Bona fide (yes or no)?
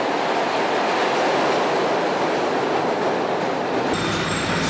yes